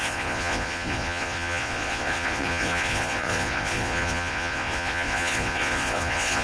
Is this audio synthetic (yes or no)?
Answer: yes